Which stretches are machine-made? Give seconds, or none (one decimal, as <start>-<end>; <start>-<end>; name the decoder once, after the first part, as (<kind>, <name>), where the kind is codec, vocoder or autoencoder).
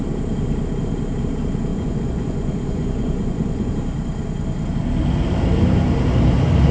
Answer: 1.7-3.7 (vocoder, Vocos)